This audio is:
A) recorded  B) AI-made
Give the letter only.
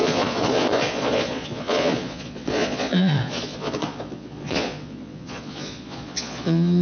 B